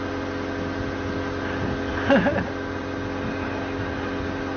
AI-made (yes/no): no